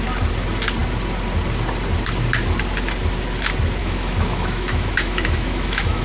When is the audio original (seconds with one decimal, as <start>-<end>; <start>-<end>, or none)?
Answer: 0.0-3.8